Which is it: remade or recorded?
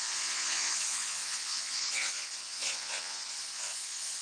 remade